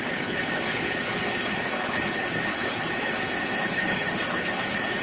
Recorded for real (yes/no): no